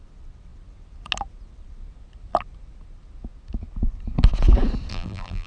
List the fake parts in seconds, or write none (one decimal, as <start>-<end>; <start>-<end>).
4.9-5.5